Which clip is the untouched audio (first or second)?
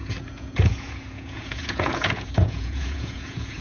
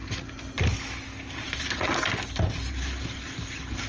second